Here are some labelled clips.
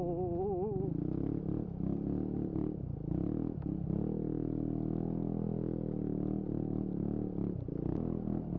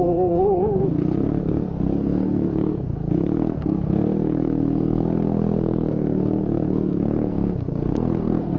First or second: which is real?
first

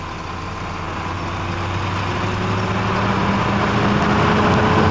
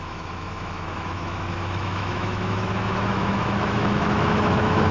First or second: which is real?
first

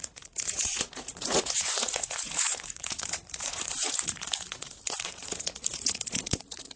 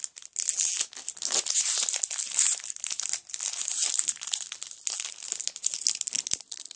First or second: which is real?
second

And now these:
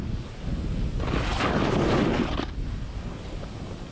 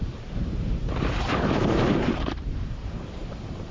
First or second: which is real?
first